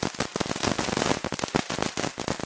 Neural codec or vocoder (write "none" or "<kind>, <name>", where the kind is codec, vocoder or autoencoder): none